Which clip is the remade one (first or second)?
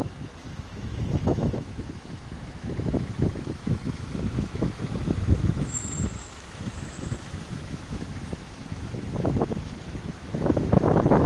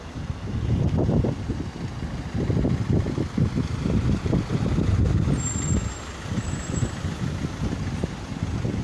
first